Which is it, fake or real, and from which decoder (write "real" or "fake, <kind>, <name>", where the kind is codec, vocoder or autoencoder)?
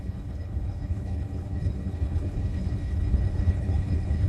fake, codec, HILCodec